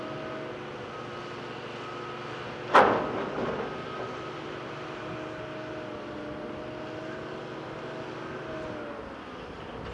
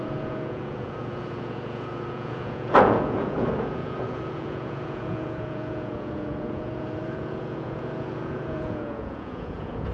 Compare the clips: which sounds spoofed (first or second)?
second